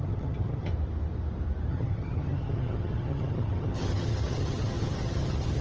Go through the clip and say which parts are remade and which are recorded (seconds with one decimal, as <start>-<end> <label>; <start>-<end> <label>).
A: 0.0-0.7 remade; 0.7-1.7 recorded; 1.7-5.6 remade